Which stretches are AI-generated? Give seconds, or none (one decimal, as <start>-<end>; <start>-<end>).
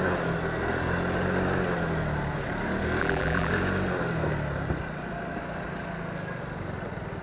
3.0-3.5